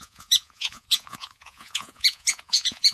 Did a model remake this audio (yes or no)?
yes